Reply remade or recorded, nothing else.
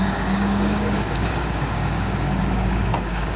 remade